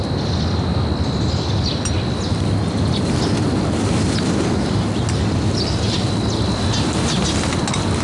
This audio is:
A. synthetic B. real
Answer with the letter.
B